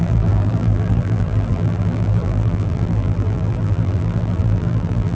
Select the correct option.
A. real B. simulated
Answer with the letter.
B